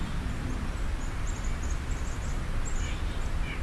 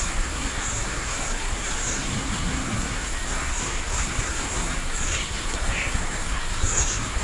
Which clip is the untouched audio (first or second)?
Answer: first